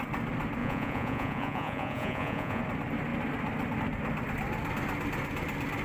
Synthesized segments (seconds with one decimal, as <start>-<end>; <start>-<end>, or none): 0.6-2.6